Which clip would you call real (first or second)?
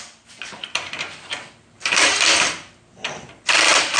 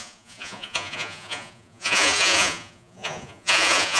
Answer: first